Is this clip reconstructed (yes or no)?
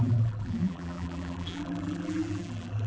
yes